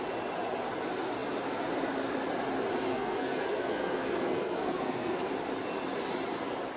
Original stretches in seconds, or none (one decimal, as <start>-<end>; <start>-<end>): 0.0-2.9; 5.3-6.8